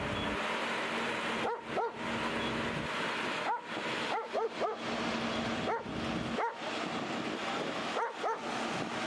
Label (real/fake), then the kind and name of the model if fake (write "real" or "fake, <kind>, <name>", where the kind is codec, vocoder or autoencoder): real